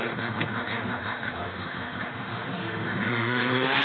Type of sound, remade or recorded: remade